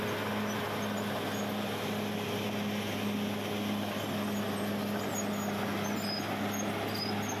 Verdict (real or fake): real